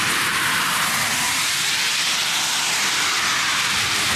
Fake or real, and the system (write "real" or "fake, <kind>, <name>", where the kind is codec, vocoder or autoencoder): real